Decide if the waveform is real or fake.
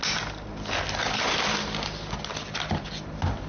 real